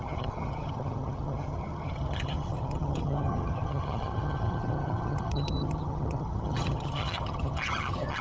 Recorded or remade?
remade